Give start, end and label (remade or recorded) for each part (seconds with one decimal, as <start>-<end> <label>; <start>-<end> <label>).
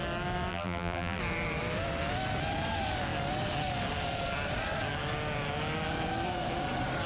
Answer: 0.0-0.5 recorded; 0.5-1.2 remade; 1.2-7.1 recorded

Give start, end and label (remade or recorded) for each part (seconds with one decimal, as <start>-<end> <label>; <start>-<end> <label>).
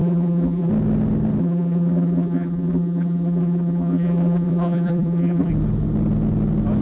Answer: 0.0-0.7 remade; 0.7-1.4 recorded; 1.4-5.5 remade; 5.5-6.8 recorded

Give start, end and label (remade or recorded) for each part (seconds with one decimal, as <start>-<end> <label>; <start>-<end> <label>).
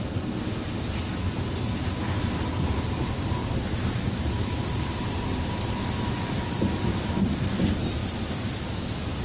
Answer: 0.0-3.4 recorded; 3.4-5.4 remade; 5.4-8.0 recorded; 8.0-9.2 remade